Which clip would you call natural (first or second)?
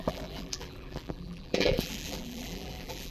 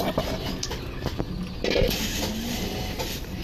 second